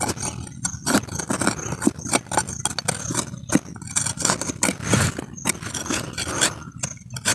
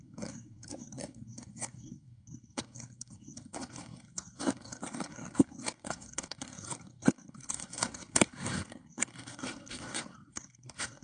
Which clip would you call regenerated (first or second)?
second